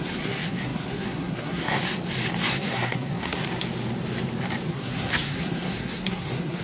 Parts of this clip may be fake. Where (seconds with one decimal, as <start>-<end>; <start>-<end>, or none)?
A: 0.0-1.8; 2.5-3.4; 4.7-6.6